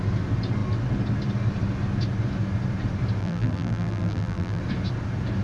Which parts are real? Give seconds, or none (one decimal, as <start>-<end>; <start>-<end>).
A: 0.0-3.2; 4.6-5.4